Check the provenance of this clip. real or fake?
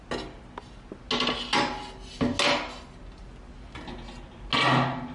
real